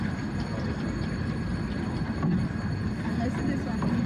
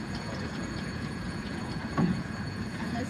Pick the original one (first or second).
first